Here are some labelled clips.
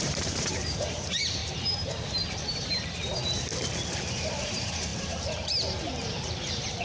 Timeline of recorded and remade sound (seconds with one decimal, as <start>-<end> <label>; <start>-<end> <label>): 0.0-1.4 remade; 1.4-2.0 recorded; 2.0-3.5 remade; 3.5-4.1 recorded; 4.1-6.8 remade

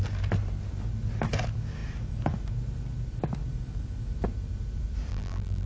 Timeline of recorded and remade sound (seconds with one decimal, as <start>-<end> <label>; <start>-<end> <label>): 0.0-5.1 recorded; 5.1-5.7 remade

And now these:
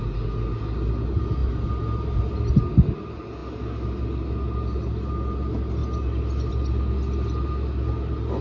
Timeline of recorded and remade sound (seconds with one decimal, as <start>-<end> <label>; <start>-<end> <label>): 0.0-8.4 recorded

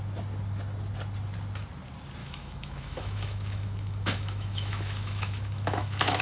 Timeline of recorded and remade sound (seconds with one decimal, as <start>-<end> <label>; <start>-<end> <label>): 0.0-2.2 recorded; 2.2-6.2 remade

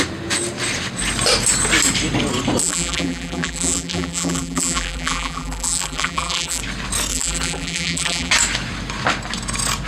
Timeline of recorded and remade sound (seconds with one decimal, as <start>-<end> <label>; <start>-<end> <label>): 0.0-2.6 recorded; 2.6-6.6 remade; 6.6-7.1 recorded; 7.1-8.3 remade; 8.3-9.9 recorded

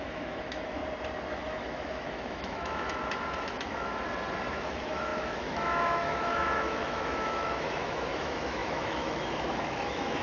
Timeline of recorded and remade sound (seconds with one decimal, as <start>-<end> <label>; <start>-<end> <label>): 0.0-0.8 remade; 0.8-1.3 recorded; 1.3-3.9 remade; 3.9-4.5 recorded; 4.5-10.2 remade

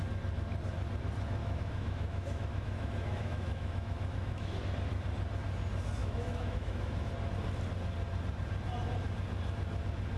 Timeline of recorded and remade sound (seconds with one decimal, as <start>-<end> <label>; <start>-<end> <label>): 0.0-1.4 recorded; 1.4-4.6 remade; 4.6-6.0 recorded; 6.0-7.1 remade; 7.1-10.2 recorded

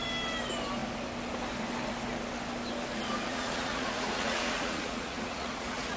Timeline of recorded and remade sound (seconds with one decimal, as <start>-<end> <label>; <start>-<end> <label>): 0.0-3.3 recorded; 3.3-6.0 remade